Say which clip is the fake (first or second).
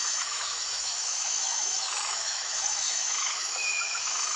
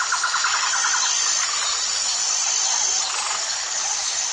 first